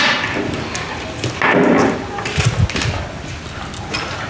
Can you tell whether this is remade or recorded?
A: recorded